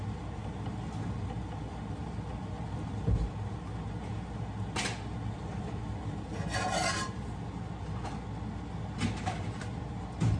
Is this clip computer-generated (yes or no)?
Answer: no